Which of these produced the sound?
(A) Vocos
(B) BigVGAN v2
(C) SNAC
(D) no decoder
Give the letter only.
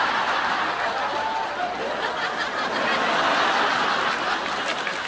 D